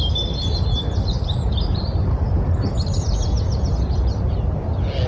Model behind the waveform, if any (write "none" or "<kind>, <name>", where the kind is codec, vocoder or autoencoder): none